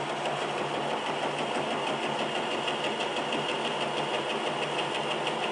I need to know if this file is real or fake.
real